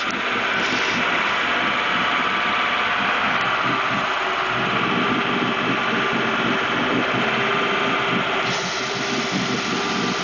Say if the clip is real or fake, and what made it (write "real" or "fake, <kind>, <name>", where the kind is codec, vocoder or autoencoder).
real